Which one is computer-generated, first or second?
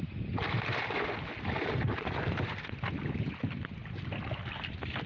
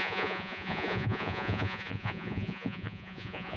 second